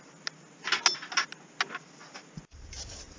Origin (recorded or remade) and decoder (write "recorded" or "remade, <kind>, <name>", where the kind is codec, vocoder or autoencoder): recorded